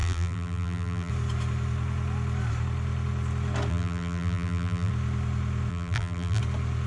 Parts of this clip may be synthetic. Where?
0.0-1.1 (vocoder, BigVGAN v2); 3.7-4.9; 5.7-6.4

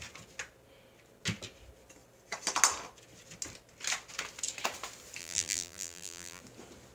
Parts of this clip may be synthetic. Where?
5.2-6.4 (vocoder, BigVGAN v2)

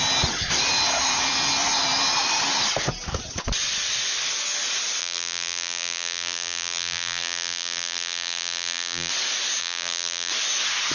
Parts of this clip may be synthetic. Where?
5.0-9.1 (vocoder, BigVGAN v2); 9.6-10.3